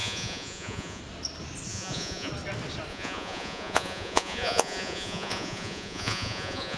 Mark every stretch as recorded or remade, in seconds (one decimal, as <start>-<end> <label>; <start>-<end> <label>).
0.0-1.0 remade; 1.0-1.7 recorded; 1.7-2.3 remade; 2.3-2.9 recorded; 2.9-6.8 remade